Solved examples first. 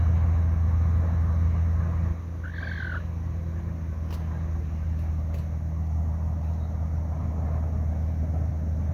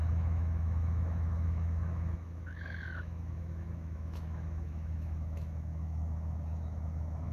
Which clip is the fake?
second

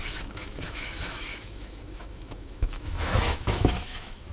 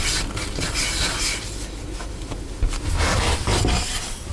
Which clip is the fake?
first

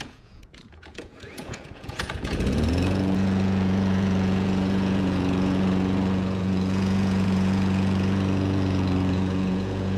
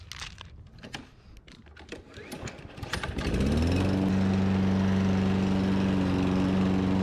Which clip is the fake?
first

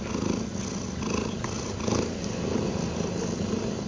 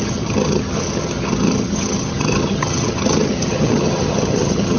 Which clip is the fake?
second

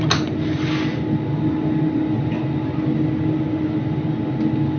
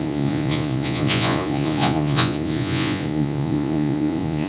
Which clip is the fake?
second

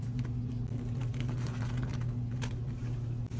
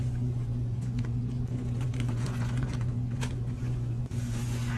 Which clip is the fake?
second